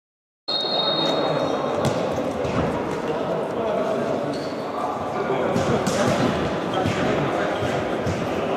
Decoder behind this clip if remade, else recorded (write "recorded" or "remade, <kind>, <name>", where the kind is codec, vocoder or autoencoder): recorded